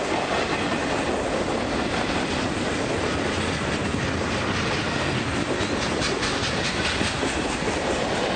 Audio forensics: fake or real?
real